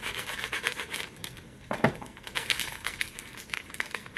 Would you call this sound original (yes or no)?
no